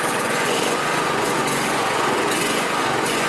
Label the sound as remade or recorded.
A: remade